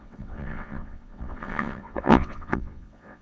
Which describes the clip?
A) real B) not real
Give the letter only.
B